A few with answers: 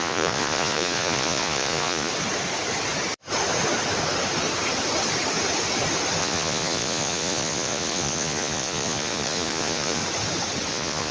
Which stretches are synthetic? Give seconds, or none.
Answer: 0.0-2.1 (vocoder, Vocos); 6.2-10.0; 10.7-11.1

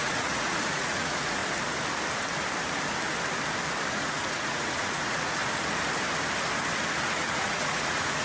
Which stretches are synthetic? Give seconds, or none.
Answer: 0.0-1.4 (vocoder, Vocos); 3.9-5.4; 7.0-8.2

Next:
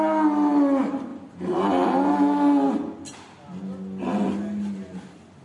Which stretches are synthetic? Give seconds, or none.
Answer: none